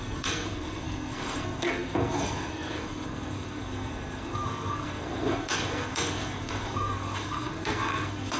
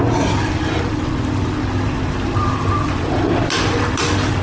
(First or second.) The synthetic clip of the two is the first